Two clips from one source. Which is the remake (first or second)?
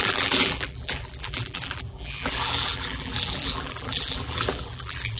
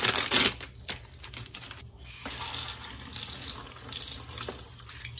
first